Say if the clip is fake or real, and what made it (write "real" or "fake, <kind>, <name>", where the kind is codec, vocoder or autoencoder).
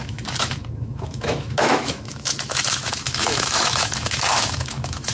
fake, autoencoder, DAC-VAE